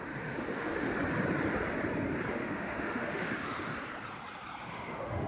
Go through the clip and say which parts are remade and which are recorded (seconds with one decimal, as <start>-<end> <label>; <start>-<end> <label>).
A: 0.0-0.9 remade; 0.9-2.3 recorded; 2.3-3.7 remade; 3.7-4.6 recorded; 4.6-5.3 remade